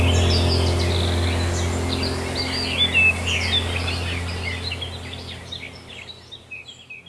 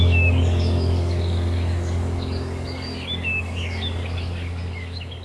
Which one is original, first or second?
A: first